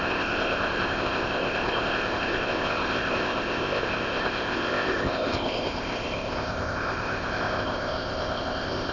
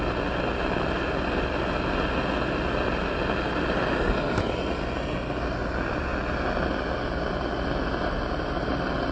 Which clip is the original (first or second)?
second